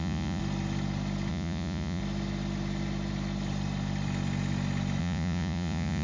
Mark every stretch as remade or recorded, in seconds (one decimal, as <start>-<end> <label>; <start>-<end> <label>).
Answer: 0.0-0.4 remade; 0.4-1.3 recorded; 1.3-2.0 remade; 2.0-5.0 recorded; 5.0-6.0 remade